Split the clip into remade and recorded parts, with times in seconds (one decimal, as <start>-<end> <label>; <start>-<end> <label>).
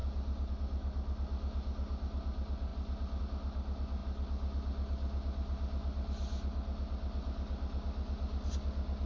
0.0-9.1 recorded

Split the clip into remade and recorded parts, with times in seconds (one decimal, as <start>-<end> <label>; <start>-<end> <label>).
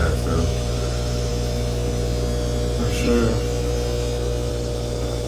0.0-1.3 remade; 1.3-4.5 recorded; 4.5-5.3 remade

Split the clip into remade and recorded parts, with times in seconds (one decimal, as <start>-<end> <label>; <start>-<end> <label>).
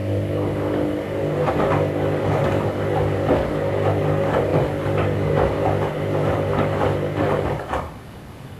0.0-8.6 remade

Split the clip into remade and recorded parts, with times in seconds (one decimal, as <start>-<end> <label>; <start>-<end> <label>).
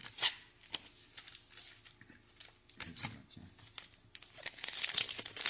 0.0-5.5 recorded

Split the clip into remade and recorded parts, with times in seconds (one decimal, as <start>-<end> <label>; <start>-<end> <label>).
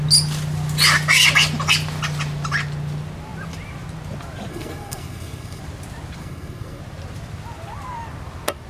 0.0-4.5 recorded; 4.5-5.6 remade; 5.6-6.2 recorded; 6.2-6.8 remade; 6.8-8.7 recorded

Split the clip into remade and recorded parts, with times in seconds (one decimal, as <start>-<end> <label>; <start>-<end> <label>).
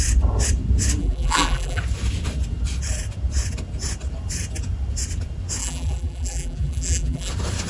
0.0-1.0 recorded; 1.0-1.8 remade; 1.8-5.6 recorded; 5.6-7.3 remade; 7.3-7.7 recorded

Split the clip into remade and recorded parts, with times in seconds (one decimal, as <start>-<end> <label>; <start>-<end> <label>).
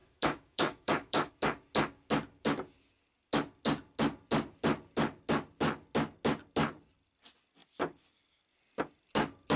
0.0-1.3 remade; 1.3-9.6 recorded